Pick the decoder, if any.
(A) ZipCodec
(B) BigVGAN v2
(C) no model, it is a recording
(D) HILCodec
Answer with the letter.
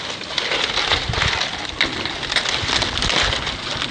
C